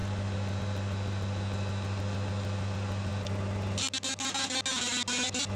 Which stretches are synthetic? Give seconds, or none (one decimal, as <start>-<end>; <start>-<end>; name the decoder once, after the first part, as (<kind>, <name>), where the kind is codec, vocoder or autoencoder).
none